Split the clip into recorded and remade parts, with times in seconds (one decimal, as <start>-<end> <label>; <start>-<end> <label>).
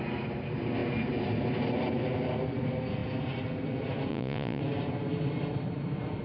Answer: 0.0-4.1 recorded; 4.1-4.6 remade; 4.6-6.2 recorded